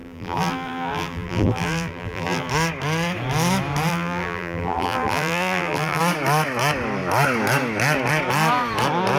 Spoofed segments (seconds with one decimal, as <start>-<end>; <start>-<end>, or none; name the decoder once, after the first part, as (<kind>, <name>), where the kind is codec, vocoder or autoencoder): 0.0-2.5 (vocoder, BigVGAN v2); 3.9-6.0